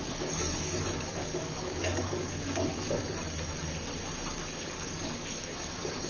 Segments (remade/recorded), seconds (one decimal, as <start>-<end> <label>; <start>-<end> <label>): 0.0-3.0 remade; 3.0-4.6 recorded; 4.6-6.1 remade